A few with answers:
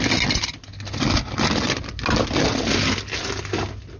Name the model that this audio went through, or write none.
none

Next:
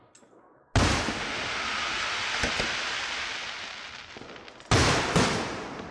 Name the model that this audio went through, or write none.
none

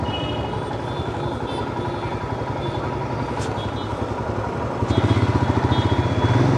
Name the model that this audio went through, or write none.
none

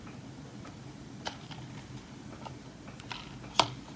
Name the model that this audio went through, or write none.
vocoder, BigVGAN v2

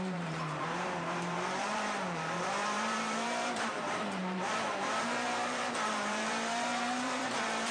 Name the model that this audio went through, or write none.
vocoder, BigVGAN v2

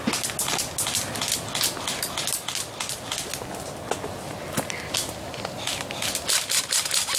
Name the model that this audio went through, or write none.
none